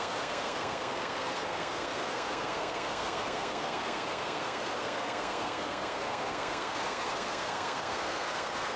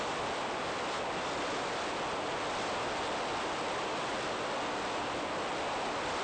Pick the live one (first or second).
second